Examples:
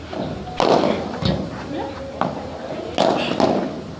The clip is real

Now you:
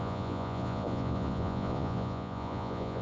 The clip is fake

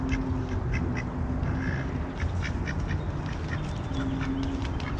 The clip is real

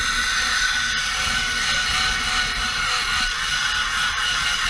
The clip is real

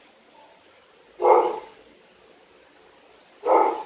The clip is real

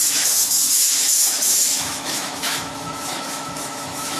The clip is fake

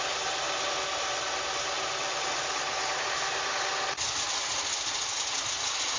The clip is real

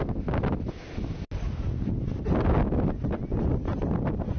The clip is real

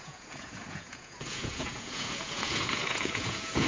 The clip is fake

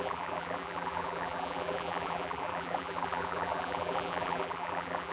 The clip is fake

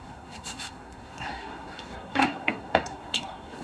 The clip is fake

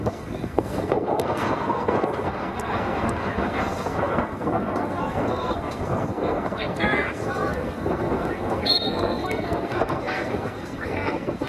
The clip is fake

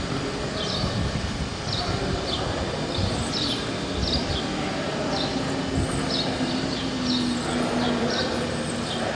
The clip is real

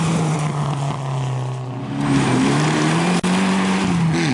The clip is real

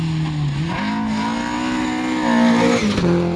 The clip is real